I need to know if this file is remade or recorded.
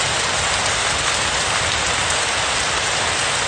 recorded